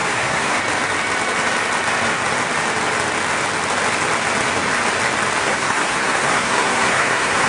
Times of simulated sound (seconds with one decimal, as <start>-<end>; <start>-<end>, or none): 0.0-0.6; 5.4-7.5